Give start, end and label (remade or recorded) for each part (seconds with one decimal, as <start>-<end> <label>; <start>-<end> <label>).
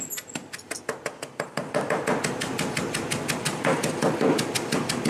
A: 0.0-5.1 recorded